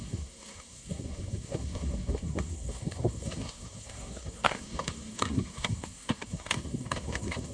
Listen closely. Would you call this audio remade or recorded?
remade